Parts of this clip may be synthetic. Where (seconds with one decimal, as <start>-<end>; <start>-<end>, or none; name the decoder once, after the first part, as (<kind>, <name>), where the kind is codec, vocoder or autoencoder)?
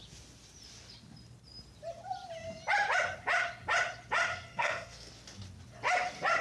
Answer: 4.3-5.1 (codec, SNAC)